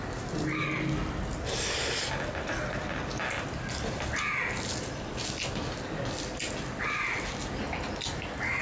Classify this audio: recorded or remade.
recorded